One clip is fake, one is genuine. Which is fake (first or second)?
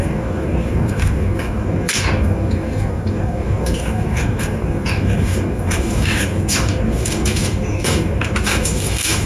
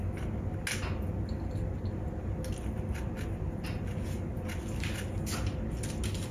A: first